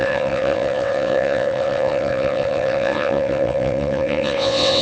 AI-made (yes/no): yes